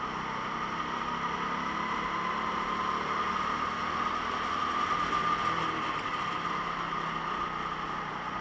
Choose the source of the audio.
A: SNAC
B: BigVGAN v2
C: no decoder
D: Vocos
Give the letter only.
C